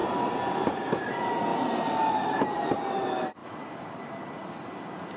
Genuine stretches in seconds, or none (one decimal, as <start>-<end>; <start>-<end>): 1.5-2.1